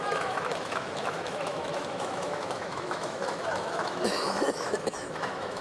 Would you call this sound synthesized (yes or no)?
yes